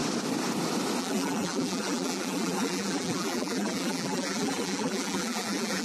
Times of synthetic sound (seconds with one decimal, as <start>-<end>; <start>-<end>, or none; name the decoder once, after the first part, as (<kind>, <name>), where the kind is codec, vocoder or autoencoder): 1.0-5.8 (vocoder, BigVGAN v2)